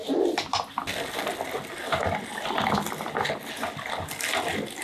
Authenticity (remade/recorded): recorded